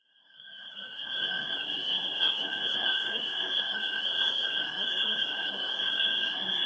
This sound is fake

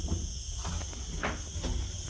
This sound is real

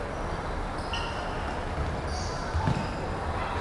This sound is real